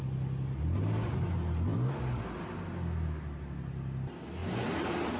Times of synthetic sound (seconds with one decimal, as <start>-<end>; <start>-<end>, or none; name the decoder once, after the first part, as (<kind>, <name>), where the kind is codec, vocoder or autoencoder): 4.4-5.2 (vocoder, BigVGAN v2)